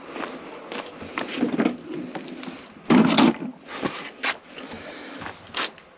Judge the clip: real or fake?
real